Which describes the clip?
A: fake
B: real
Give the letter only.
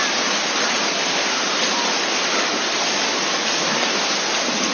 B